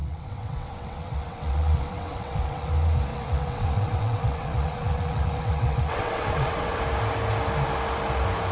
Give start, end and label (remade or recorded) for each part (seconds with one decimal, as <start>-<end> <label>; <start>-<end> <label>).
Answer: 0.0-2.7 remade; 2.7-3.1 recorded; 3.1-6.8 remade; 6.8-8.5 recorded